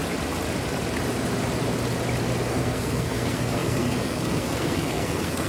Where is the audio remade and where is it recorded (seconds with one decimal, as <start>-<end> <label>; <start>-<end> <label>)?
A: 0.0-2.5 recorded; 2.5-5.5 remade